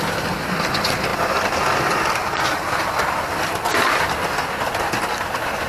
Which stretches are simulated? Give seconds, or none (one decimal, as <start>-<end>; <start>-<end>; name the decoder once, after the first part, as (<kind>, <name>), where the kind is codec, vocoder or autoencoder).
none